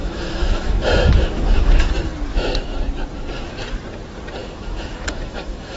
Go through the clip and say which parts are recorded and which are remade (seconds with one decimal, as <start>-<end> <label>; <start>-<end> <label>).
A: 0.0-1.9 remade; 1.9-2.3 recorded; 2.3-2.8 remade; 2.8-4.4 recorded; 4.4-5.8 remade